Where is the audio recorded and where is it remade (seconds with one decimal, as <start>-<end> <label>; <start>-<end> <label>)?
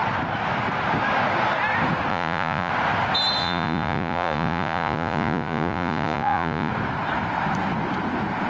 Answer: 0.0-2.1 recorded; 2.1-2.7 remade; 2.7-3.4 recorded; 3.4-6.7 remade; 6.7-8.5 recorded